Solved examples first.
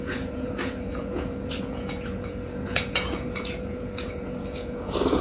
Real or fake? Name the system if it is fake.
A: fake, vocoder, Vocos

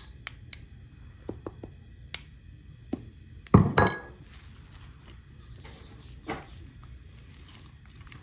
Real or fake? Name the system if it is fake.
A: real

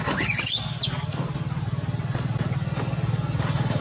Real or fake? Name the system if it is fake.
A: real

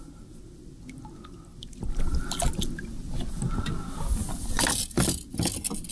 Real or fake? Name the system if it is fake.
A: real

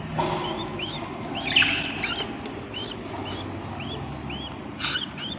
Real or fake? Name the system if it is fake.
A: real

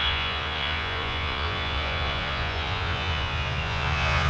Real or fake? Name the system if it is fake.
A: fake, vocoder, Vocos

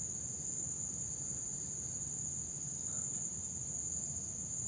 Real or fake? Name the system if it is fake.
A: real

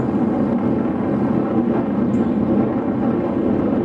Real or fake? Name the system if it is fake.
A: real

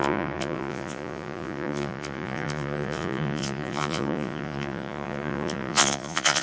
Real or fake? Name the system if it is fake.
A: fake, vocoder, Vocos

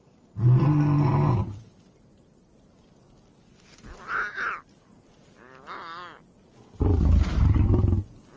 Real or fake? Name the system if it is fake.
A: real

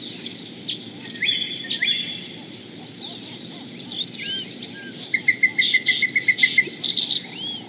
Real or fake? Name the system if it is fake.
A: real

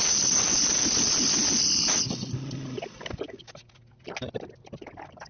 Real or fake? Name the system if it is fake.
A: real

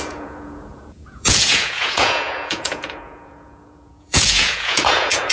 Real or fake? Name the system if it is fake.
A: fake, vocoder, Vocos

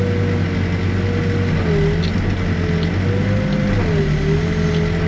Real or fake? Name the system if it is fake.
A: real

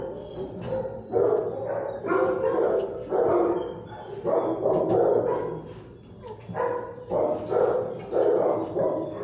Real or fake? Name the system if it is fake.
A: real